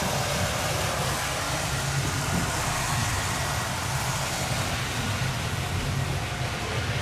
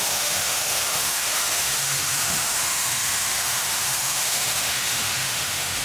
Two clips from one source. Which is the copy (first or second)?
second